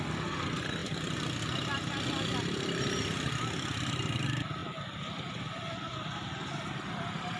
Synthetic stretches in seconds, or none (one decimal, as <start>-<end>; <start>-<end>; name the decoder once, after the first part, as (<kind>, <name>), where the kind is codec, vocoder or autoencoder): none